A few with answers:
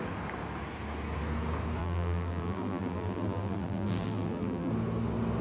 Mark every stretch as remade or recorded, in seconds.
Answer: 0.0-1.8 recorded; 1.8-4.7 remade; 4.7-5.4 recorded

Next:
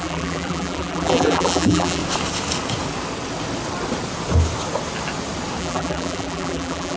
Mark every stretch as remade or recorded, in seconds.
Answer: 0.0-2.0 remade; 2.0-5.6 recorded; 5.6-7.0 remade

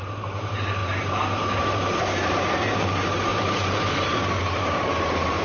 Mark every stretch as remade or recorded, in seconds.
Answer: 0.0-3.3 remade; 3.3-4.4 recorded; 4.4-5.4 remade

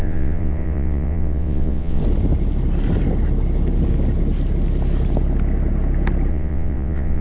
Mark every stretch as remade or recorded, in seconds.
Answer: 0.0-2.0 remade; 2.0-6.3 recorded; 6.3-7.2 remade

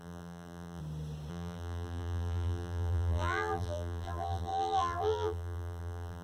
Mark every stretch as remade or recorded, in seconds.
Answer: 0.0-0.8 remade; 0.8-1.3 recorded; 1.3-6.2 remade

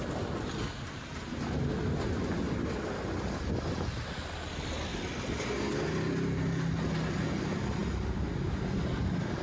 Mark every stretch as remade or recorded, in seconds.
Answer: 0.0-9.4 recorded

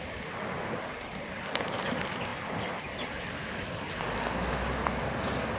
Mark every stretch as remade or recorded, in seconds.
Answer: 0.0-5.6 recorded

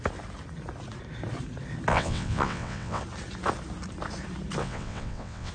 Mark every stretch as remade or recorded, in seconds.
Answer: 0.0-1.9 recorded; 1.9-3.0 remade; 3.0-4.6 recorded; 4.6-5.5 remade